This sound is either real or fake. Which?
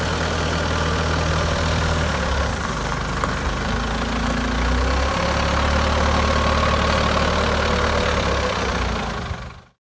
real